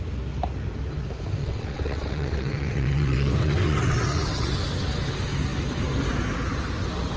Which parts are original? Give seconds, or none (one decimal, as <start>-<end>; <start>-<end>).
0.0-1.4; 4.5-7.2